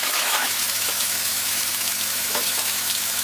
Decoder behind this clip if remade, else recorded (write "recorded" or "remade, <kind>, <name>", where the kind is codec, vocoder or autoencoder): remade, autoencoder, DAC-VAE